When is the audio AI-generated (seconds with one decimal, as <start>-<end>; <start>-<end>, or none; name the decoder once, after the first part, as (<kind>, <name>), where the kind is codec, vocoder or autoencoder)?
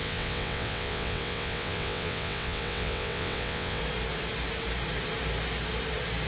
0.0-3.8 (vocoder, WaveNeXt)